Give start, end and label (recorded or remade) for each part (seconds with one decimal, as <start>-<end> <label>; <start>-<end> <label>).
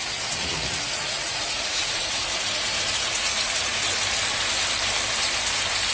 0.0-2.3 remade; 2.3-2.8 recorded; 2.8-3.8 remade; 3.8-5.9 recorded